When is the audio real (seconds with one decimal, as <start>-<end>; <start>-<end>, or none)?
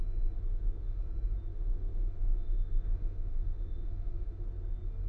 0.0-0.5; 1.0-1.5; 4.4-5.1